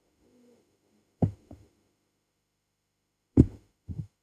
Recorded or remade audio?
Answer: remade